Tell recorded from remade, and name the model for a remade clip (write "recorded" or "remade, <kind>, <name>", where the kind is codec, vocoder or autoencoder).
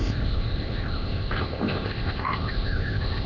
remade, codec, ZipCodec